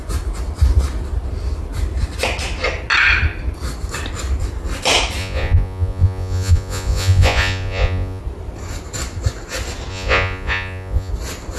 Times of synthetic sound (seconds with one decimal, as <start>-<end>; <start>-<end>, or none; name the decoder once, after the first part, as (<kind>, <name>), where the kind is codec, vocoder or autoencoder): 5.2-8.2 (vocoder, Vocos); 9.9-11.1